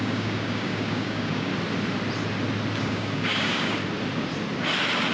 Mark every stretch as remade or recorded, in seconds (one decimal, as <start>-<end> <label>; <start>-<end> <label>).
0.0-1.5 remade; 1.5-2.8 recorded; 2.8-3.8 remade; 3.8-5.1 recorded